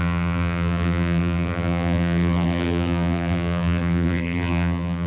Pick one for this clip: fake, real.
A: fake